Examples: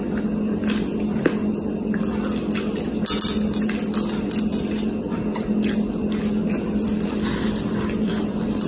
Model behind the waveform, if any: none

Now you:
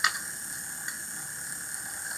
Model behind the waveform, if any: none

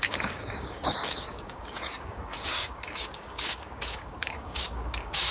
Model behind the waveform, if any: codec, DAC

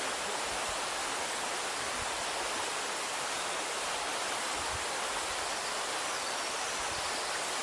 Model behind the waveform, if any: none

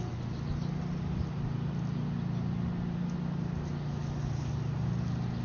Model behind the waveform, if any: none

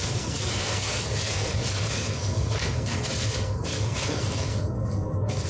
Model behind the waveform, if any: codec, SNAC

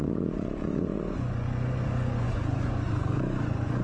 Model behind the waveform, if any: vocoder, Vocos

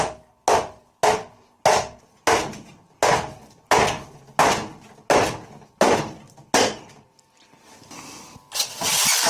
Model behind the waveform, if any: none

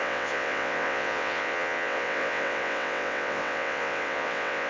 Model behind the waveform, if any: vocoder, WaveNeXt